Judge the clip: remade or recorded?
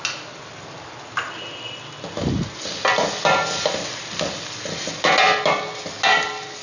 recorded